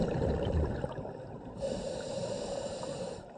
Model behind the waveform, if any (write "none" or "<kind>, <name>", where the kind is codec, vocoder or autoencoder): vocoder, BigVGAN v2